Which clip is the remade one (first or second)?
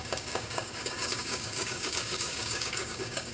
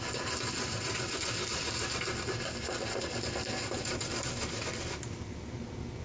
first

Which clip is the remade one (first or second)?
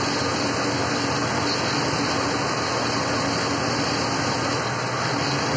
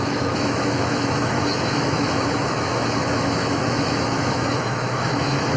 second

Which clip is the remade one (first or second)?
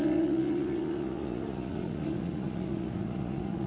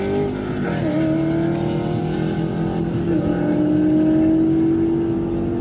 first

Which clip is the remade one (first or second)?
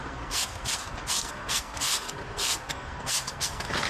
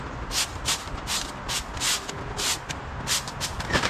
first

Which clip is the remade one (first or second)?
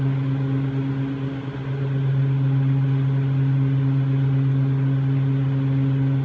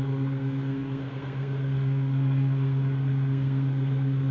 second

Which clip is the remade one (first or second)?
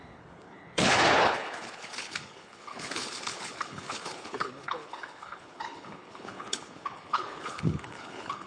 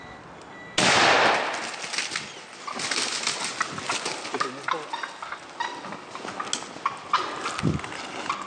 first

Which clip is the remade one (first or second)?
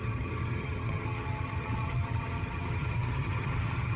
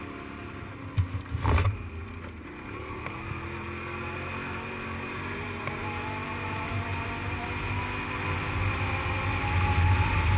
first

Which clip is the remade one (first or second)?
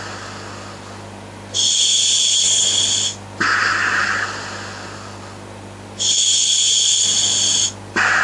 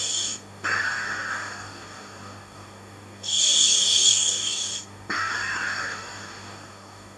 second